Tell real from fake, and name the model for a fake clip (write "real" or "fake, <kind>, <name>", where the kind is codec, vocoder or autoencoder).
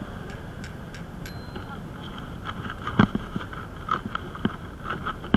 real